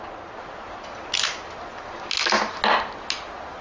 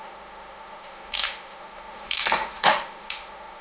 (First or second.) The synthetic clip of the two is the second